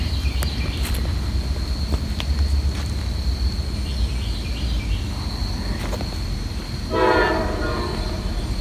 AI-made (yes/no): no